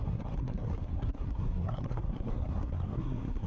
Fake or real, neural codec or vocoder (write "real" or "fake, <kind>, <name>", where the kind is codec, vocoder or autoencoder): fake, codec, SNAC